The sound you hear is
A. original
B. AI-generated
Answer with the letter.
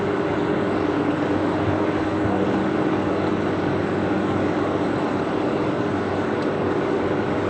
B